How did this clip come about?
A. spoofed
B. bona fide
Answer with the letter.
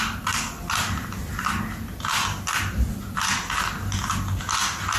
B